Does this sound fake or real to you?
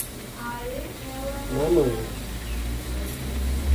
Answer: real